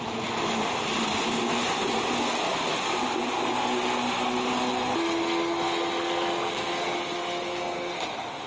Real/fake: real